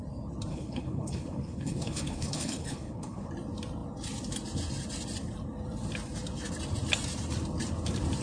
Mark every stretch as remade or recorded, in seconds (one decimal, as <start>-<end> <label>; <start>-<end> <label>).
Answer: 0.0-0.5 recorded; 0.5-3.3 remade; 3.3-8.2 recorded